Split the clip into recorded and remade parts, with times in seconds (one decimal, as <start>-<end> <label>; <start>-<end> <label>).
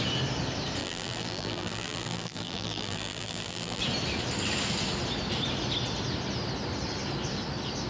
0.0-0.8 recorded; 0.8-3.8 remade; 3.8-7.9 recorded